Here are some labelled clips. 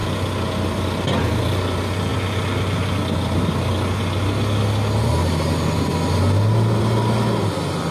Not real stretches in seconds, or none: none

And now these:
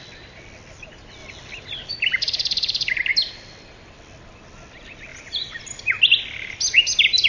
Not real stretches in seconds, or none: 1.2-1.9; 5.1-5.6

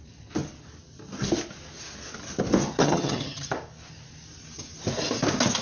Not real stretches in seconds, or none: 2.8-3.5

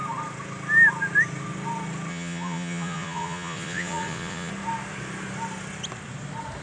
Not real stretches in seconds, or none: 2.1-4.5

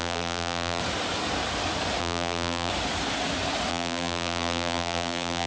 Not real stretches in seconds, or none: 0.0-0.8; 2.0-2.7; 3.7-5.5

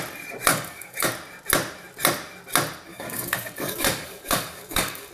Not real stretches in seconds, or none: 0.5-1.1; 2.9-5.1

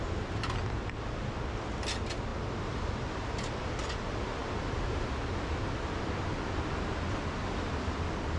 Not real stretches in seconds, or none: none